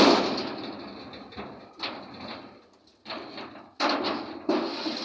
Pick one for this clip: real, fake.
real